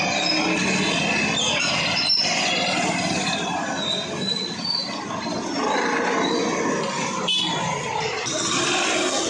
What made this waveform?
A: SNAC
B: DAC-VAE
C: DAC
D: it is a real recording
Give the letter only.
D